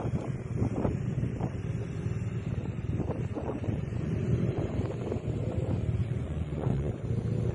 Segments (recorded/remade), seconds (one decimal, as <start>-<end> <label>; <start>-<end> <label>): 0.0-3.3 recorded; 3.3-4.1 remade; 4.1-6.0 recorded; 6.0-6.9 remade; 6.9-7.5 recorded